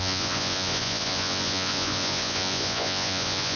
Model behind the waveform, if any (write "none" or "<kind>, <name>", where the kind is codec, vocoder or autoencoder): vocoder, Vocos